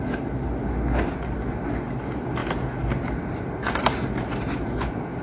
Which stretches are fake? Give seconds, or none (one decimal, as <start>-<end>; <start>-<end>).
none